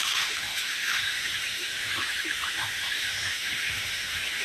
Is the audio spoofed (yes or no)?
yes